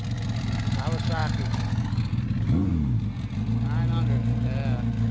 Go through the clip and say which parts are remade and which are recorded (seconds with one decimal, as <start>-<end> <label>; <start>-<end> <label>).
0.0-5.1 recorded